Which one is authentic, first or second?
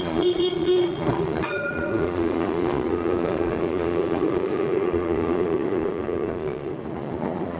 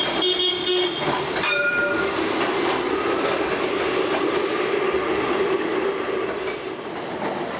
second